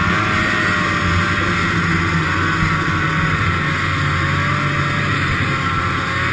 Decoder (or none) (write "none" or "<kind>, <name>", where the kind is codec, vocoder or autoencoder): none